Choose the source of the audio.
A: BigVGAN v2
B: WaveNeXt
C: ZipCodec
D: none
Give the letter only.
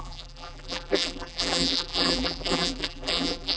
A